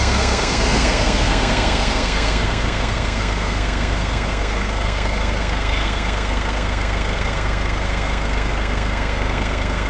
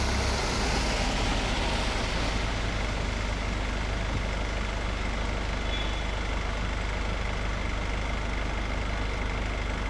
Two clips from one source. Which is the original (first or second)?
second